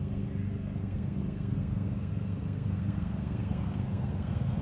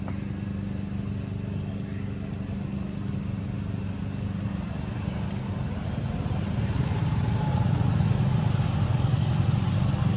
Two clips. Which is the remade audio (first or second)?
first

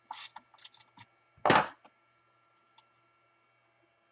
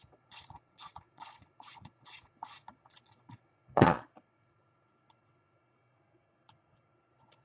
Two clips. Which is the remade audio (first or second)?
second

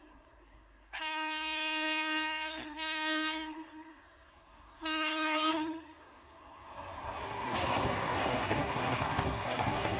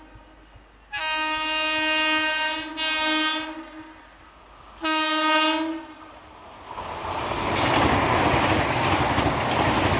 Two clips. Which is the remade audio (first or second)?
first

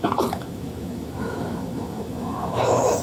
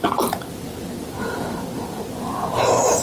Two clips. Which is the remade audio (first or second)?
first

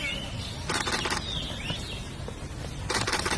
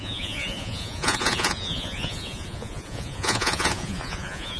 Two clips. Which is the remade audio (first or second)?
second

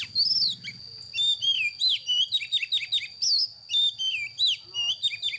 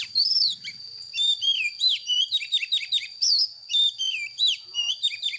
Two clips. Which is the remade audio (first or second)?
second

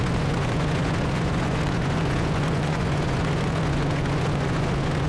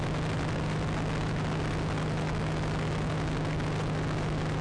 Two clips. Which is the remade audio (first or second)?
first